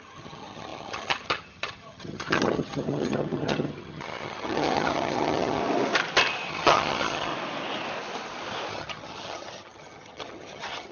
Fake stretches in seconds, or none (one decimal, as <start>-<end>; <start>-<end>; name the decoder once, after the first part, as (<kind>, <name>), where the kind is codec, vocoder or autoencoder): 0.0-5.6 (vocoder, HiFi-GAN); 6.5-7.3; 8.7-10.9